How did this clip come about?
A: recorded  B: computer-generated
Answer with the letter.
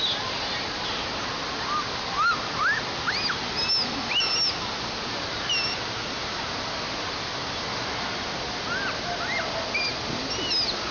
A